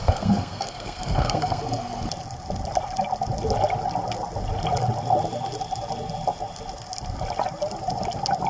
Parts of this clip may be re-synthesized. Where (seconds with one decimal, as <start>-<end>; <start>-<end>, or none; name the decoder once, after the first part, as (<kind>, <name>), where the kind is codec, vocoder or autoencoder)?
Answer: 0.0-1.6 (codec, SNAC)